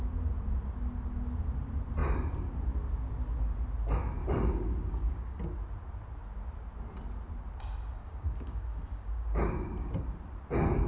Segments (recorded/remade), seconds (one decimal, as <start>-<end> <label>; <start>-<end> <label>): 0.0-4.2 recorded; 4.2-5.4 remade; 5.4-8.0 recorded; 8.0-9.9 remade; 9.9-10.9 recorded